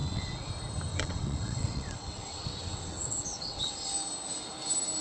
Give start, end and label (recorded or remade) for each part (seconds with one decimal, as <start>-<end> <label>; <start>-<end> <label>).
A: 0.0-0.5 remade; 0.5-0.9 recorded; 0.9-3.9 remade; 3.9-5.0 recorded